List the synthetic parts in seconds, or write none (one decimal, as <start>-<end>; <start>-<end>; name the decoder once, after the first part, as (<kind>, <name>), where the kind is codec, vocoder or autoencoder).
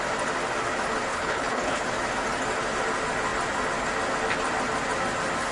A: 1.1-1.8 (codec, HILCodec)